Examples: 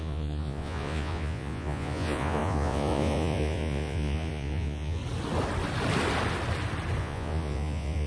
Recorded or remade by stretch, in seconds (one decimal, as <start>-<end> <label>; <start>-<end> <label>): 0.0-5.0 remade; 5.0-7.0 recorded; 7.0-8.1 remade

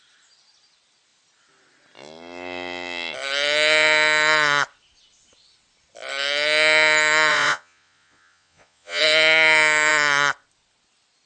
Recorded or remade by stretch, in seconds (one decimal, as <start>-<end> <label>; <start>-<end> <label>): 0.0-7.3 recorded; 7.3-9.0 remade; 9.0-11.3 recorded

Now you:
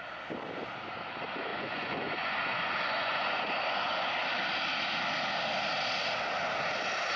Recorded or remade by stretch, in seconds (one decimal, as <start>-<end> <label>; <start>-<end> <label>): 0.0-1.5 recorded; 1.5-4.1 remade; 4.1-7.2 recorded

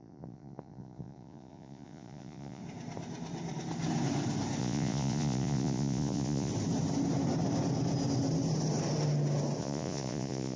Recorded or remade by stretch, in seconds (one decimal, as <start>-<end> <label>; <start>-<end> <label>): 0.0-2.6 remade; 2.6-4.6 recorded; 4.6-6.5 remade; 6.5-9.6 recorded; 9.6-10.6 remade

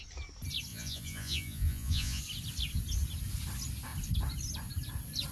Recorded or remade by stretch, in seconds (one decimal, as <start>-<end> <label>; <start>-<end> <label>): 0.0-0.7 recorded; 0.7-2.2 remade; 2.2-5.3 recorded

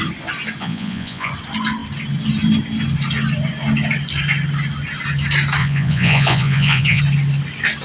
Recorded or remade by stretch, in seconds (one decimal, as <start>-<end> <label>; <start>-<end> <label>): 0.0-0.6 recorded; 0.6-1.3 remade; 1.3-5.6 recorded; 5.6-7.0 remade; 7.0-7.8 recorded

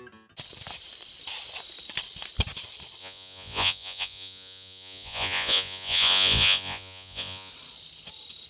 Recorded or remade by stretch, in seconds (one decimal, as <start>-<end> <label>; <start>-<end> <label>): 0.0-3.0 recorded; 3.0-7.5 remade; 7.5-8.5 recorded

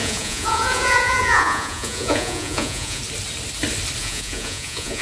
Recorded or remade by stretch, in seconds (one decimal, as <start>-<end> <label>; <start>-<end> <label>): 0.0-3.0 remade; 3.0-4.0 recorded; 4.0-5.0 remade